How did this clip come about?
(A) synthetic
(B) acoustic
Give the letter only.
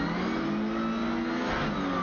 B